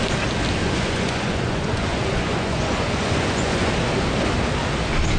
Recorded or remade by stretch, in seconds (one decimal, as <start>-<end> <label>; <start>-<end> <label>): 0.0-0.6 recorded; 0.6-3.7 remade; 3.7-5.2 recorded